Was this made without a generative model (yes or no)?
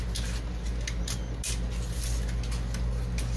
yes